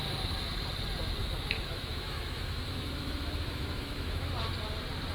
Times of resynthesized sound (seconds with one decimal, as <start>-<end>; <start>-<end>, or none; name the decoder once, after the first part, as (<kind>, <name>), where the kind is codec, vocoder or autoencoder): 1.2-4.3 (autoencoder, DAC-VAE)